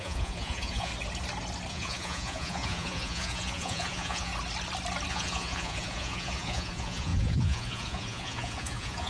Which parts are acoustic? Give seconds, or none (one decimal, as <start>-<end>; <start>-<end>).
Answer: 0.9-1.7; 4.3-5.1